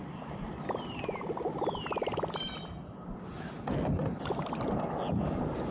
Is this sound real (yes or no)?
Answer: yes